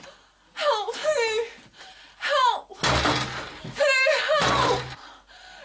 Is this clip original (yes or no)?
yes